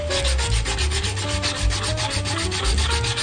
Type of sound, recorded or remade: recorded